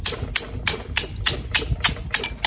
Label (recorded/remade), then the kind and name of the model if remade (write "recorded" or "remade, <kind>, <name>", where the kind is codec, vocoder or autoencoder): recorded